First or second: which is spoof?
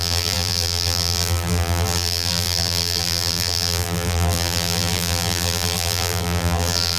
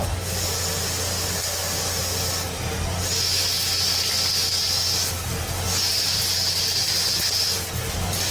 first